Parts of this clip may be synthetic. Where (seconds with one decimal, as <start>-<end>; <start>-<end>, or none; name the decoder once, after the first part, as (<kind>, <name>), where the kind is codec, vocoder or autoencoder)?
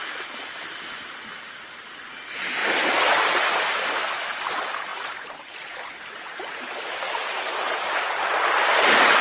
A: none